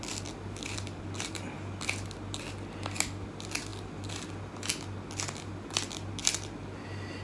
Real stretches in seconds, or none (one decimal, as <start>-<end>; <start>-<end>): 0.0-7.2